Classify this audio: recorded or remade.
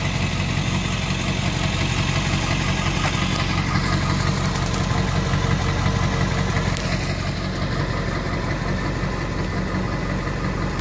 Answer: recorded